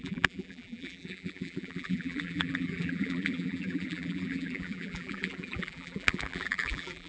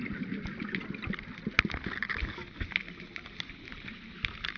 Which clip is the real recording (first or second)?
second